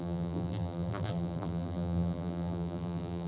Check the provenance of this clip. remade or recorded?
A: remade